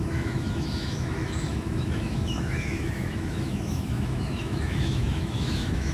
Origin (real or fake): fake